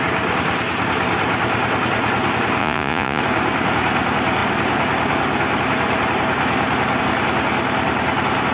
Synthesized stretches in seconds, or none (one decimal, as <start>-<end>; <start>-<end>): 2.6-3.2

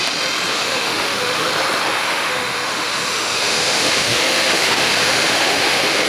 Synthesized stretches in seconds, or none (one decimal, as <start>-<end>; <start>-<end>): 0.5-1.5; 2.0-6.1

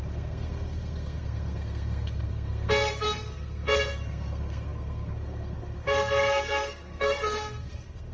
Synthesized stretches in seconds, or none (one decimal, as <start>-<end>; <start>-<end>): 0.0-8.1

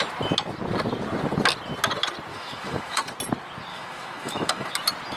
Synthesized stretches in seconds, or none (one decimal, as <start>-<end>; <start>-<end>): 2.3-3.1; 3.7-4.7

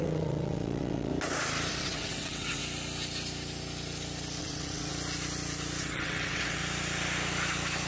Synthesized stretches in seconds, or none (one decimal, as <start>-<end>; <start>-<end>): 0.0-1.1; 1.7-2.6; 4.4-4.9; 5.8-6.6

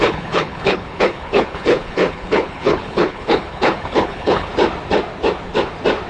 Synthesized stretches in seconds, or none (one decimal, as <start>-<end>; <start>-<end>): 0.0-4.5